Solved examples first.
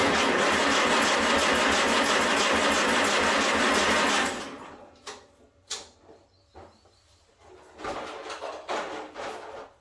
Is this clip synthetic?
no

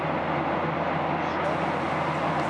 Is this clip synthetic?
no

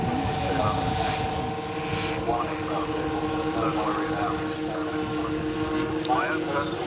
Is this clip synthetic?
no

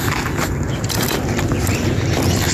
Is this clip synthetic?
no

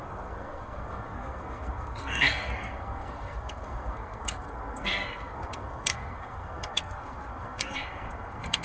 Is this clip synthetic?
yes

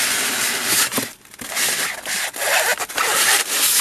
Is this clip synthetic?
no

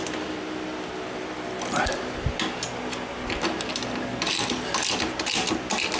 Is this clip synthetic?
no